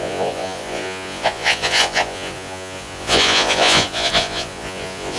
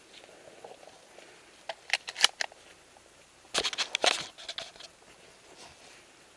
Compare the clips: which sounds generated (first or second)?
first